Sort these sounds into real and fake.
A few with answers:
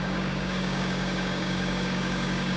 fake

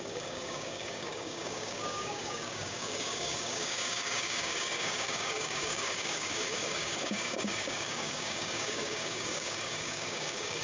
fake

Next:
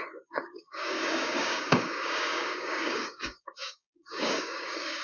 fake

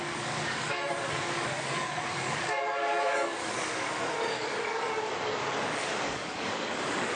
fake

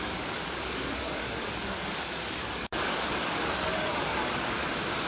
fake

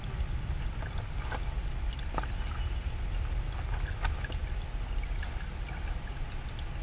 real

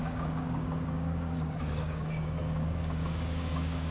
fake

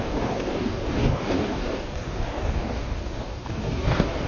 fake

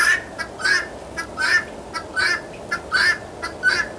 real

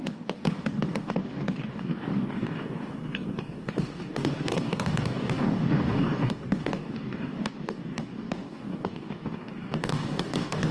fake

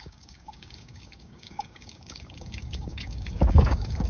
fake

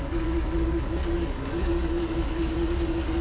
fake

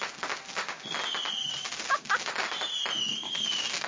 real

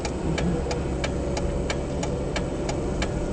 real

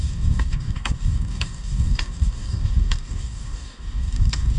fake